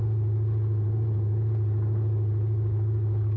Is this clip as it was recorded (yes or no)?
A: yes